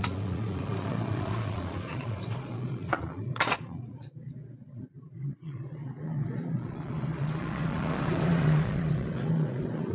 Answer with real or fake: fake